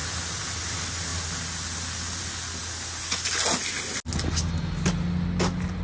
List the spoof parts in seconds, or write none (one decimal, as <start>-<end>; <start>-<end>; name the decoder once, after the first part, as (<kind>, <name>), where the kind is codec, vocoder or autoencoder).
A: none